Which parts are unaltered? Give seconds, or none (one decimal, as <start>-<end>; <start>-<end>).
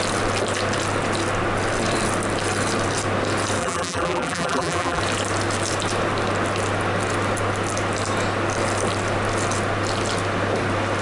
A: 0.0-3.6; 5.0-11.0